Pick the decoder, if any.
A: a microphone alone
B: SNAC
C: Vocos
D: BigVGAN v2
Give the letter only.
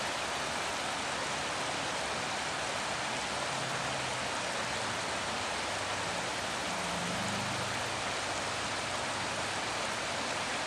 A